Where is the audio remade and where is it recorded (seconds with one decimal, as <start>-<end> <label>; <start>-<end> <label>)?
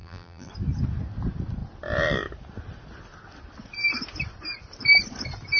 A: 0.0-0.5 remade; 0.5-5.6 recorded